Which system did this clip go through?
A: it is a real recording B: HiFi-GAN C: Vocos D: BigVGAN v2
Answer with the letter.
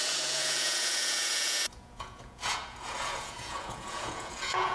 C